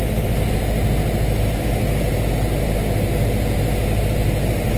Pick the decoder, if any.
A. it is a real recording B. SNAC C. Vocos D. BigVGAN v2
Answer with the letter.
A